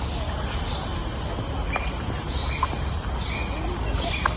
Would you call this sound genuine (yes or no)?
yes